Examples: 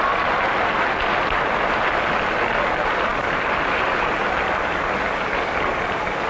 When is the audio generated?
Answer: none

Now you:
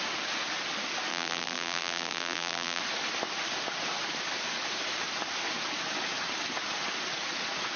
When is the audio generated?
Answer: 1.1-2.8 (vocoder, BigVGAN v2)

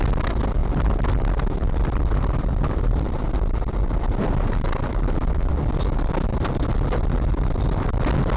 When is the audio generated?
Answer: 0.6-5.5 (vocoder, BigVGAN v2)

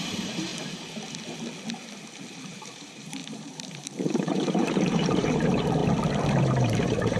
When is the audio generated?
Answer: 0.0-0.5 (vocoder, BigVGAN v2); 2.3-5.8; 6.4-7.2